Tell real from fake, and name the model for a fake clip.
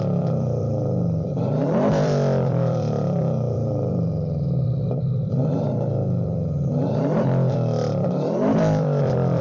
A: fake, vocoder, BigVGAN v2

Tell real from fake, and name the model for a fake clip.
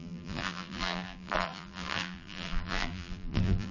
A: fake, vocoder, BigVGAN v2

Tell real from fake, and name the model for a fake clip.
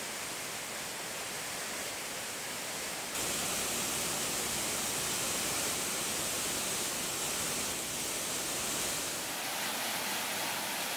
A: real